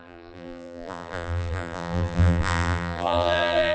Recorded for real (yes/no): no